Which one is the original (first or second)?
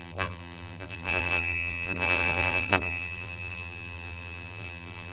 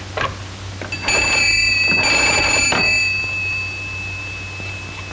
second